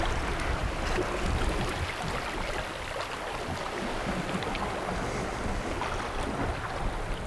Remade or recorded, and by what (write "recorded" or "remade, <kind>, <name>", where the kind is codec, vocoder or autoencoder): recorded